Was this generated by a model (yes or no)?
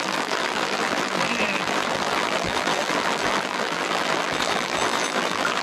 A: yes